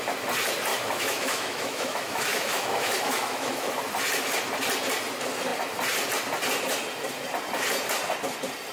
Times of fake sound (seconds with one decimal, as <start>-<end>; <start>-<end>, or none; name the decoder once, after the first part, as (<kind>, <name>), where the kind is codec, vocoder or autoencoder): 0.7-3.8 (autoencoder, DAC-VAE)